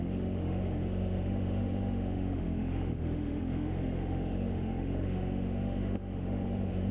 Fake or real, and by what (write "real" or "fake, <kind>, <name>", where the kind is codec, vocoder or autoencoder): fake, autoencoder, DAC-VAE